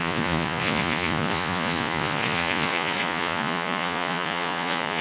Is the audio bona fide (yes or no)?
no